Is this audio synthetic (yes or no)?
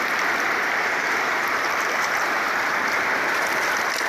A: yes